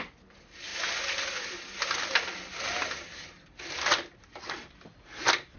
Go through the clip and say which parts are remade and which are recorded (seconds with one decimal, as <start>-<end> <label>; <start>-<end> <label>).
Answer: 0.0-4.3 recorded; 4.3-4.9 remade; 4.9-5.6 recorded